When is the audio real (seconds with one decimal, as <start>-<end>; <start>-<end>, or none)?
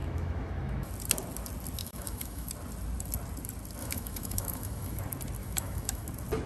0.9-1.8; 2.5-3.8; 5.0-5.4; 6.1-6.5